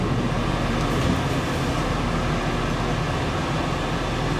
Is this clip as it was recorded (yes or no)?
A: yes